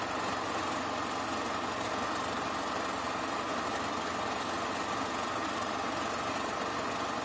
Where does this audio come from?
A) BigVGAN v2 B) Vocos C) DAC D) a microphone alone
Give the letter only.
D